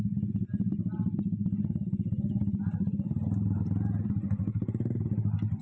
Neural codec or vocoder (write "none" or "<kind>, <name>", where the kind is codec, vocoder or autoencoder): none